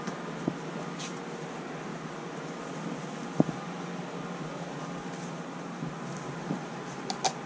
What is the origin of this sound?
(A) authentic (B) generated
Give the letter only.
A